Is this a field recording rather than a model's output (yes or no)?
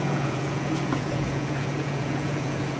no